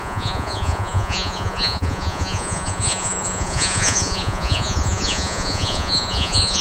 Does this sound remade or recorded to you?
remade